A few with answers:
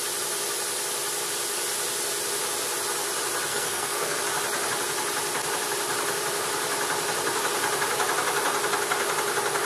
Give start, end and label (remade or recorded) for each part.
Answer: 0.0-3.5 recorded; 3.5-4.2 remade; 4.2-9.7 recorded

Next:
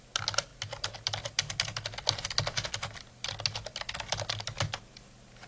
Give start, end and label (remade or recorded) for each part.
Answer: 0.0-5.5 recorded